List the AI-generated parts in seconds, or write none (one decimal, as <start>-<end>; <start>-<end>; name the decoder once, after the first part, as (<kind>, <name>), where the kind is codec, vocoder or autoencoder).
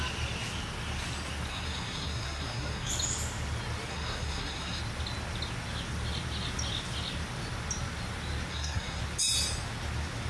1.5-2.9 (codec, SNAC); 3.9-4.8; 8.5-9.0